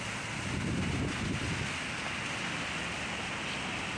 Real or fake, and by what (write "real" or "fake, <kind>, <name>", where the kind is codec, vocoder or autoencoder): real